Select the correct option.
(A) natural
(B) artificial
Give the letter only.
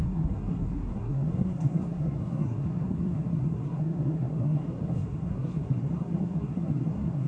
B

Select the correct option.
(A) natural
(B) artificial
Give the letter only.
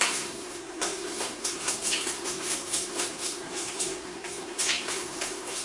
B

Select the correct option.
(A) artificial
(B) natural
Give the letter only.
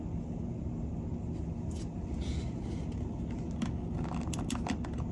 B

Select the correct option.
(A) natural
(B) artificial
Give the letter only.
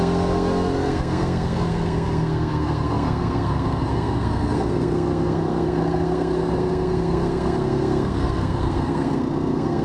B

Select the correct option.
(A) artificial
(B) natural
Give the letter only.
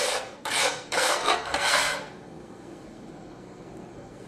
A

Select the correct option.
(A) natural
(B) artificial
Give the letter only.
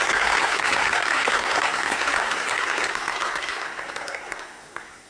B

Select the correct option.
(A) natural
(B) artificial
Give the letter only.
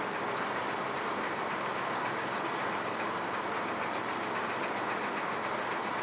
A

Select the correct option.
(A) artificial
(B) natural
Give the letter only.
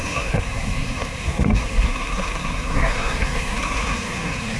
A